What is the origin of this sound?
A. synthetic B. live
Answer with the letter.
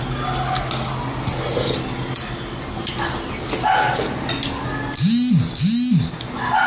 B